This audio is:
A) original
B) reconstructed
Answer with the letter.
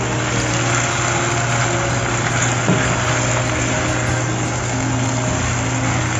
A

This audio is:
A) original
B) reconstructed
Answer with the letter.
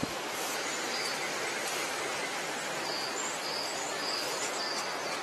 A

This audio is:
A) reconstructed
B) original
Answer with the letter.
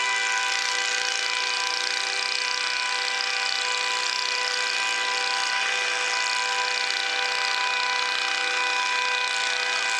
B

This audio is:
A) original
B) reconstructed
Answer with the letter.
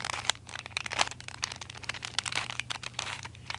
B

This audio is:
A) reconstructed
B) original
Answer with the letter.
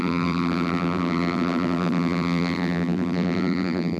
A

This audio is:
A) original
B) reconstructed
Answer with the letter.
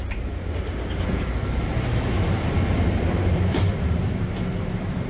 B